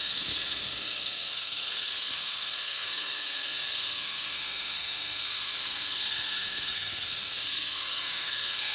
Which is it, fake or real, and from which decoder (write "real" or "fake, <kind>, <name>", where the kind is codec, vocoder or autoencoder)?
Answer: fake, codec, SNAC